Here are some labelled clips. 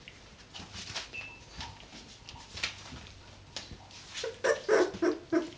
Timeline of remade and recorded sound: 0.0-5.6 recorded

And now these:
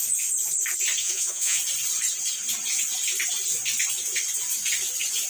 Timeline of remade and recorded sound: 0.0-1.0 recorded; 1.0-1.6 remade; 1.6-5.3 recorded

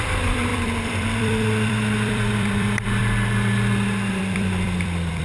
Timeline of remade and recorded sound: 0.0-3.0 remade; 3.0-4.1 recorded; 4.1-5.2 remade

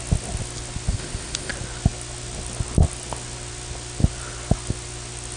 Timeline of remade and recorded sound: 0.0-0.9 recorded; 0.9-1.5 remade; 1.5-5.4 recorded

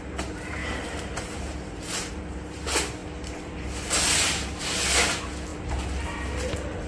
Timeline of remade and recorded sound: 0.0-0.6 recorded; 0.6-2.1 remade; 2.1-6.9 recorded